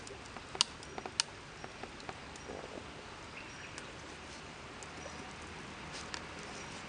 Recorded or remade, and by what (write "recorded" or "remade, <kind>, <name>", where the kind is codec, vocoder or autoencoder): recorded